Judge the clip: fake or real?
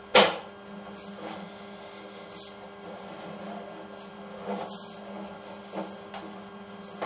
real